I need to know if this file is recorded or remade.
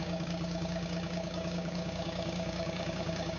remade